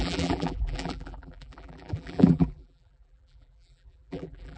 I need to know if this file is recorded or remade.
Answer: remade